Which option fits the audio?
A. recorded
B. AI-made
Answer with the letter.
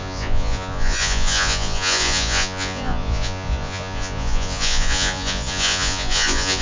B